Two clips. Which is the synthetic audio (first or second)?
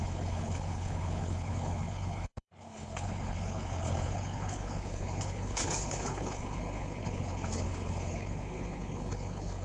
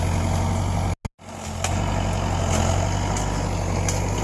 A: first